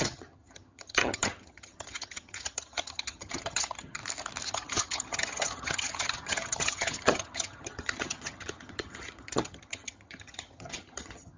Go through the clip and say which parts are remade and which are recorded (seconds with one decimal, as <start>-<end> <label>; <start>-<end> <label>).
0.0-4.0 remade; 4.0-4.5 recorded; 4.5-11.4 remade